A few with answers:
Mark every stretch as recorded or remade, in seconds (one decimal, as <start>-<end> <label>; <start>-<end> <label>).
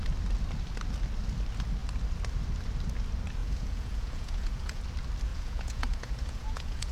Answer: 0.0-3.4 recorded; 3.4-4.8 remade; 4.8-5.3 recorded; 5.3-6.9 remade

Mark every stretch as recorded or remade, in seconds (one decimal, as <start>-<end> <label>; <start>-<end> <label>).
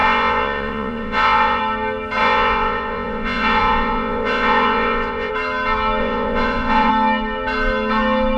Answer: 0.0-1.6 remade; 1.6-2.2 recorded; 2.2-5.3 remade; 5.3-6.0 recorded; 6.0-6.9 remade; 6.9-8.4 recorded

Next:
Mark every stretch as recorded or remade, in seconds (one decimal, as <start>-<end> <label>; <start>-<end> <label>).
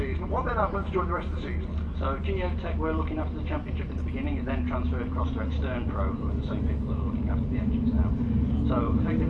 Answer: 0.0-9.3 recorded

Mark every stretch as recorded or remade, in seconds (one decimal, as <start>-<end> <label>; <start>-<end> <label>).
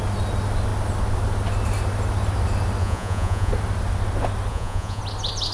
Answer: 0.0-2.8 recorded; 2.8-3.5 remade; 3.5-4.5 recorded; 4.5-5.0 remade; 5.0-5.5 recorded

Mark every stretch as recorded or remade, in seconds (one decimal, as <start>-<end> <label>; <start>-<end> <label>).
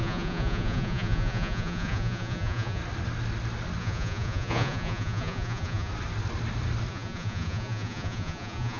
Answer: 0.0-2.8 remade; 2.8-3.8 recorded; 3.8-5.9 remade; 5.9-6.9 recorded; 6.9-8.8 remade